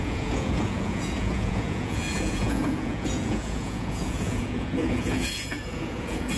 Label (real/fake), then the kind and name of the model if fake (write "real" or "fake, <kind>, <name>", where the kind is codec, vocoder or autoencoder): fake, vocoder, Vocos